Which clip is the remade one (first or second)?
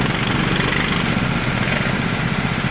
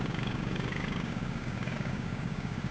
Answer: second